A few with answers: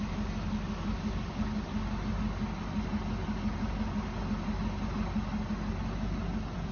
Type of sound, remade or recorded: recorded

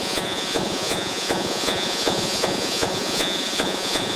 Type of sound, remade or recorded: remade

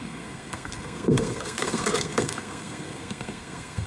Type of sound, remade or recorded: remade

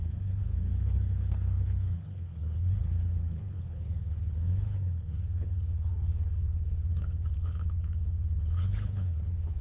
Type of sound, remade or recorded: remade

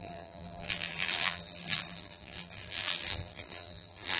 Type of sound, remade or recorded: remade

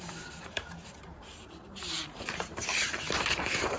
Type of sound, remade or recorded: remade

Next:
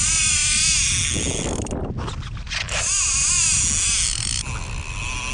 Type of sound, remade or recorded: recorded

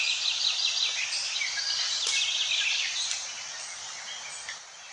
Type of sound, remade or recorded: recorded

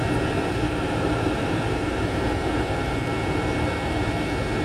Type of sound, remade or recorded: recorded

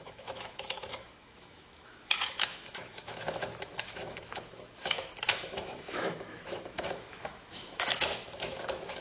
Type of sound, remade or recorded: remade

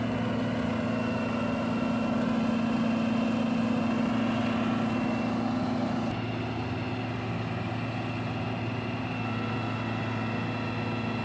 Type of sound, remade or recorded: recorded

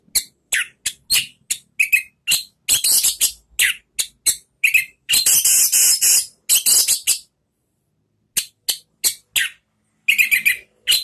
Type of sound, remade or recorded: recorded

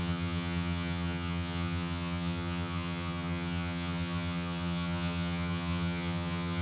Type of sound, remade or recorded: remade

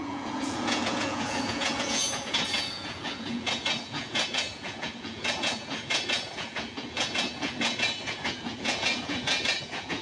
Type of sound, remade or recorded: remade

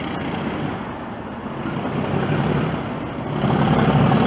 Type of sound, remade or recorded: recorded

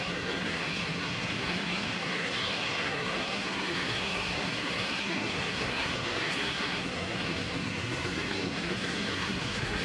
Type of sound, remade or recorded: remade